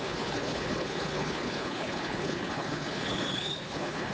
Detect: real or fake fake